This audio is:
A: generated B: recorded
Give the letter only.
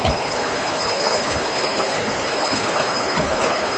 A